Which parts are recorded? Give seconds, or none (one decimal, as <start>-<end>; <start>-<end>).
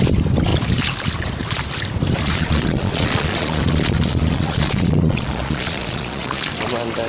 0.0-2.2; 6.5-7.1